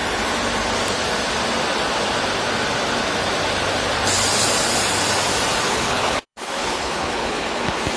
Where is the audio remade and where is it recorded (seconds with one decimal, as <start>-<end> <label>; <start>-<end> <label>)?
0.0-5.7 recorded; 5.7-7.6 remade; 7.6-8.0 recorded